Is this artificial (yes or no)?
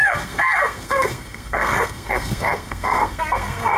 yes